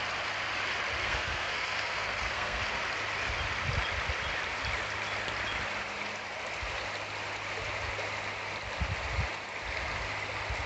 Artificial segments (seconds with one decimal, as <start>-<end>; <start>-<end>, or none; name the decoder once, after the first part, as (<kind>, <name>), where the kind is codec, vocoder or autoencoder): 1.0-2.6 (codec, SNAC)